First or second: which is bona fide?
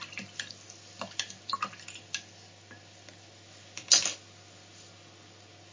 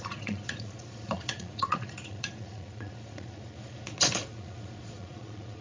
first